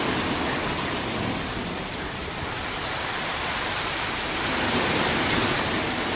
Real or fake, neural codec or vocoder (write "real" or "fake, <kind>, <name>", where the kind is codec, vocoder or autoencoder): real